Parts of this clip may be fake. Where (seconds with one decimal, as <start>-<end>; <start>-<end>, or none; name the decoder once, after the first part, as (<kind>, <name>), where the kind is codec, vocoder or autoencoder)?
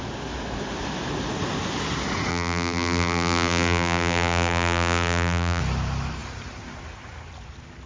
2.3-5.6 (vocoder, BigVGAN v2)